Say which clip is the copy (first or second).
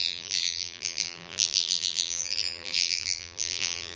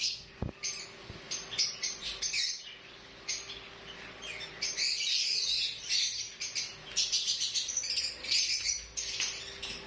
first